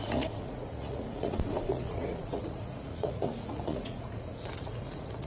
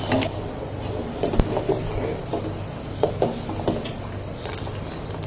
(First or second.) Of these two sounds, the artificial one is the first